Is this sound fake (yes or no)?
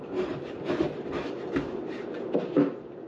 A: no